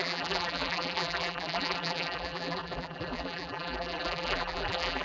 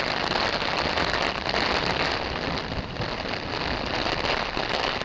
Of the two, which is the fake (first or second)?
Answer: first